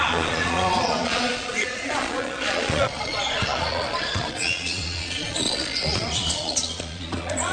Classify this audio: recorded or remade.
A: remade